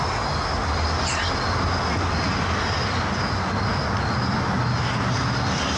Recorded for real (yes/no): yes